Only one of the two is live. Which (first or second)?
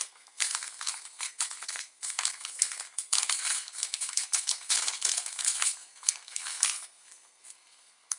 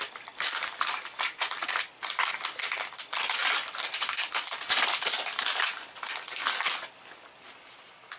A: second